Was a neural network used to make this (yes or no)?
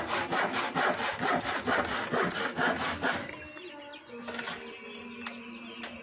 no